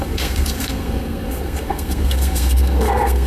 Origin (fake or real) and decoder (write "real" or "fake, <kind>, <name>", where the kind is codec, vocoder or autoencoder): fake, codec, SNAC